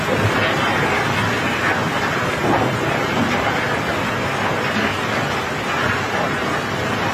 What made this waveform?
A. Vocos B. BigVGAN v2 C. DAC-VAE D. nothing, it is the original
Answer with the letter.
D